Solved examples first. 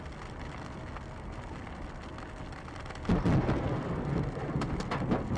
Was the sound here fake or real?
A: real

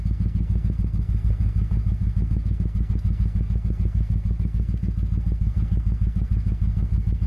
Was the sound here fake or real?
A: fake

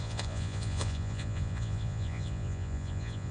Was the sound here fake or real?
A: fake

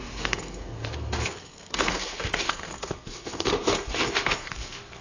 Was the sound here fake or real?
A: fake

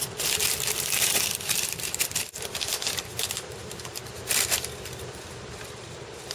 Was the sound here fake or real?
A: fake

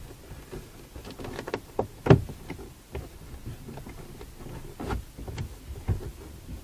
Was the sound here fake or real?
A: real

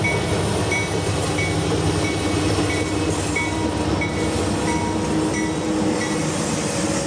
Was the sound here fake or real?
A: real